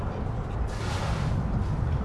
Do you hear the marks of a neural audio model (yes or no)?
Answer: no